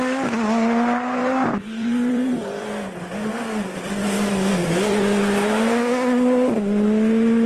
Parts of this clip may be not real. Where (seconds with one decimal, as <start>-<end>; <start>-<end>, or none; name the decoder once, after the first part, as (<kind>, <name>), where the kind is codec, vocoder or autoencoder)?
1.2-4.5 (vocoder, BigVGAN v2)

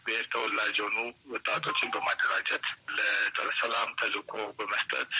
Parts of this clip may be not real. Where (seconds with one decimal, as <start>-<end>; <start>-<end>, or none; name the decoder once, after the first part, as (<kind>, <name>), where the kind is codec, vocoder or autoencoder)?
0.0-0.8 (vocoder, Vocos); 1.5-4.6

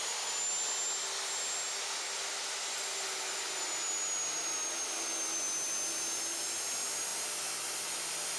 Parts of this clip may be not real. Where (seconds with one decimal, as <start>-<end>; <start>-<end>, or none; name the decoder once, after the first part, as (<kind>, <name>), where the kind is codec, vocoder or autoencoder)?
none

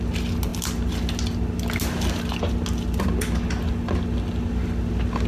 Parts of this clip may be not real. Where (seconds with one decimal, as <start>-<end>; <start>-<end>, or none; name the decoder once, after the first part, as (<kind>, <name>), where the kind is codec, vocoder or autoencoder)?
none